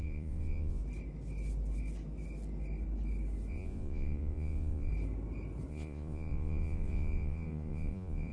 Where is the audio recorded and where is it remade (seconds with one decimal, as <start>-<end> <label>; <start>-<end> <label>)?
0.0-0.8 remade; 0.8-3.5 recorded; 3.5-4.9 remade; 4.9-5.7 recorded; 5.7-8.3 remade